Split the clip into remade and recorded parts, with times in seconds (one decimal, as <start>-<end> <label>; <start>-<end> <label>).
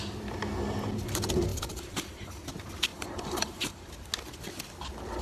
0.0-1.5 recorded; 1.5-2.5 remade; 2.5-2.9 recorded; 2.9-3.9 remade; 3.9-5.2 recorded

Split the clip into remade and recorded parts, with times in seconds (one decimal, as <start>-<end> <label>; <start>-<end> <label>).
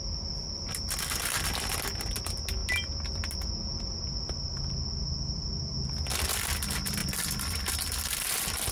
0.0-7.0 recorded; 7.0-7.6 remade; 7.6-8.7 recorded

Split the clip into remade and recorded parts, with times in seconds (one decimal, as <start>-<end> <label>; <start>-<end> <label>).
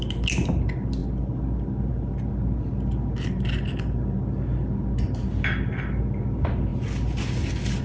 0.0-7.8 recorded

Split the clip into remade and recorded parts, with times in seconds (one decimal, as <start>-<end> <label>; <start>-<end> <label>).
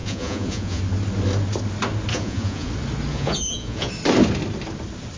0.0-0.8 remade; 0.8-2.1 recorded; 2.1-2.7 remade; 2.7-3.1 recorded; 3.1-3.9 remade; 3.9-5.2 recorded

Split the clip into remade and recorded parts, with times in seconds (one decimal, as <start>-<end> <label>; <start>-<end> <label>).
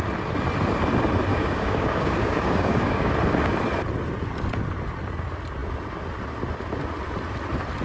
0.0-1.3 recorded; 1.3-3.1 remade; 3.1-7.8 recorded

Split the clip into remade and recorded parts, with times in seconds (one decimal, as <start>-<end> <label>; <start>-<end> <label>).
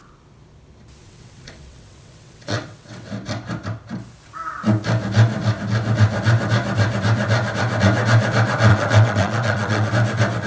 0.0-1.0 recorded; 1.0-3.1 remade; 3.1-8.7 recorded; 8.7-9.9 remade; 9.9-10.5 recorded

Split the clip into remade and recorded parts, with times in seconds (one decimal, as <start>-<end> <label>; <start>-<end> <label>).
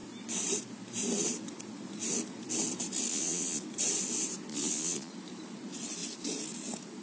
0.0-3.1 recorded; 3.1-3.6 remade; 3.6-4.5 recorded; 4.5-5.1 remade; 5.1-7.0 recorded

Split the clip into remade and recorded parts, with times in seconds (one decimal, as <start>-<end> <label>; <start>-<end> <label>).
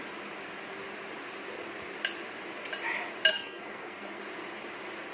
0.0-3.3 recorded; 3.3-4.2 remade; 4.2-5.1 recorded